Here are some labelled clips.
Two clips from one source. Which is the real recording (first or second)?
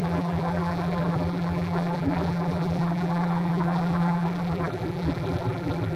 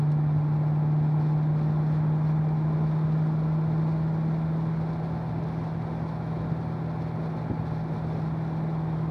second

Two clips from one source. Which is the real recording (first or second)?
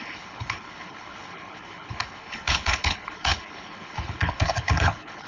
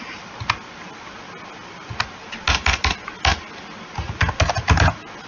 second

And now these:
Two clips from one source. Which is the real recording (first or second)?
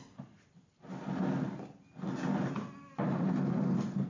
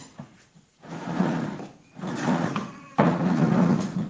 first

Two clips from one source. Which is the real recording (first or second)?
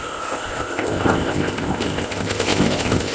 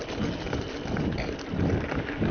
second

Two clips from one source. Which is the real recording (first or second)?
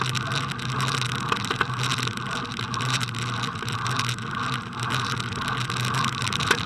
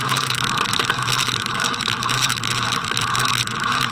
first